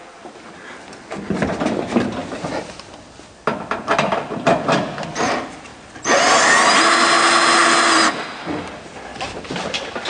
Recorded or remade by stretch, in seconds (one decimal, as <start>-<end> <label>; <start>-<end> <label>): 0.0-10.1 recorded